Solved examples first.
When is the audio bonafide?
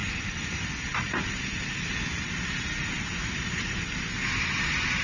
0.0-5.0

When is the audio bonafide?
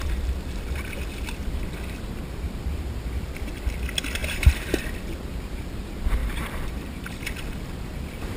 0.0-4.2; 4.8-6.2; 7.2-8.4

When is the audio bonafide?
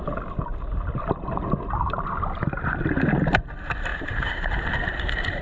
0.0-3.9; 4.7-5.4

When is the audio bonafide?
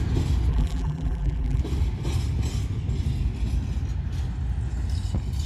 0.0-0.5; 1.6-5.5